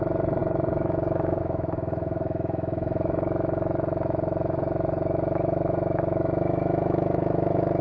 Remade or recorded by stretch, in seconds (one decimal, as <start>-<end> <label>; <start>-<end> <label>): 0.0-7.8 remade

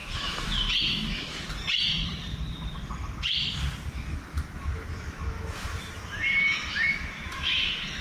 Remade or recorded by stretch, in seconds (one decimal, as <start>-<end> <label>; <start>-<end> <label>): 0.0-1.5 remade; 1.5-4.1 recorded; 4.1-8.0 remade

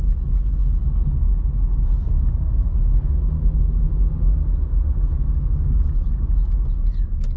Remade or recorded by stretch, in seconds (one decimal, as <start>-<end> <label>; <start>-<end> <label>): 0.0-7.4 recorded

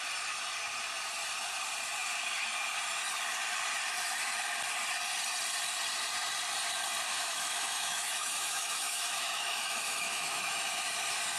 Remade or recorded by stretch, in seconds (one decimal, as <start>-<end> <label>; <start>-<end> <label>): 0.0-7.1 recorded; 7.1-10.7 remade; 10.7-11.4 recorded

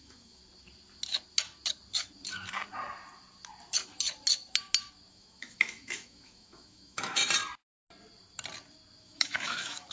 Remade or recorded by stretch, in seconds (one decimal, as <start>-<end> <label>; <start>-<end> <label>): 0.0-0.4 remade; 0.4-5.1 recorded; 5.1-7.2 remade; 7.2-9.0 recorded; 9.0-9.9 remade

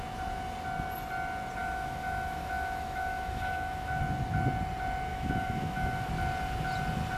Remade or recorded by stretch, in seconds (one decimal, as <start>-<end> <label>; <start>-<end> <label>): 0.0-1.6 recorded; 1.6-4.0 remade; 4.0-5.1 recorded; 5.1-6.1 remade; 6.1-7.2 recorded

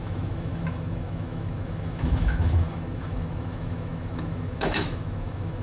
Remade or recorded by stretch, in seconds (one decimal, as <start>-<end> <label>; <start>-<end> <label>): 0.0-5.6 remade

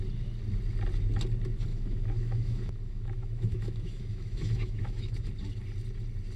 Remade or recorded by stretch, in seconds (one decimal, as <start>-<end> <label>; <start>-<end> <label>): 0.0-1.7 recorded; 1.7-5.3 remade; 5.3-6.4 recorded